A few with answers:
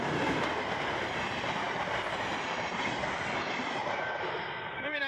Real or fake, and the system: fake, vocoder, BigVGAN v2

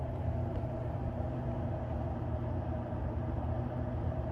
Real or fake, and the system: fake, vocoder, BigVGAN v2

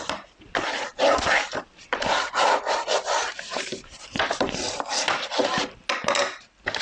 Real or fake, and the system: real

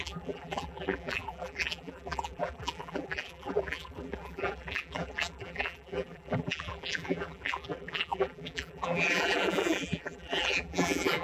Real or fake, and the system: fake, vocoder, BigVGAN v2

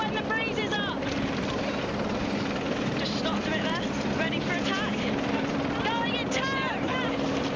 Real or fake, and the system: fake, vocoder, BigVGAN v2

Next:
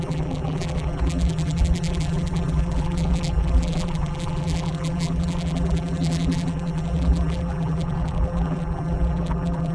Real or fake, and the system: fake, vocoder, BigVGAN v2